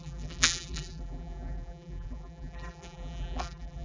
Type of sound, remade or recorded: remade